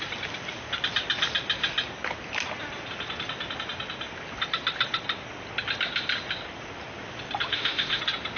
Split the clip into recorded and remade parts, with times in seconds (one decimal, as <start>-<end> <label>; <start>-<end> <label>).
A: 0.0-7.5 recorded; 7.5-8.0 remade; 8.0-8.4 recorded